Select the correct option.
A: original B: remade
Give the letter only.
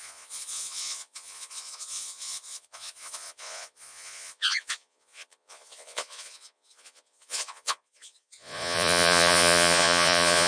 B